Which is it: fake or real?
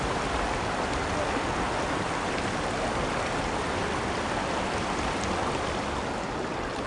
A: real